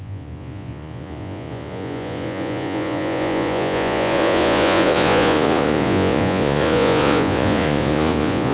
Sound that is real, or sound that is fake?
fake